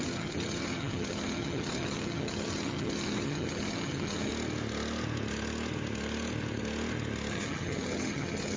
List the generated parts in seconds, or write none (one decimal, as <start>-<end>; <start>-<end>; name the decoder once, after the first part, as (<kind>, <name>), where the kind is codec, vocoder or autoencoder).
0.0-4.3 (vocoder, HiFi-GAN); 7.3-8.6